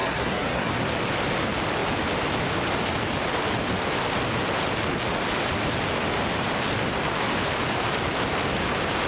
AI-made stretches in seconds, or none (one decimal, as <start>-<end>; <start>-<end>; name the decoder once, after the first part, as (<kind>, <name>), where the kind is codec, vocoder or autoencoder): 0.0-0.7 (codec, SNAC)